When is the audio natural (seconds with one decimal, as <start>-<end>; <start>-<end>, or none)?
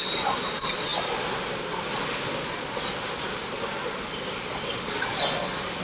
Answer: 0.0-5.8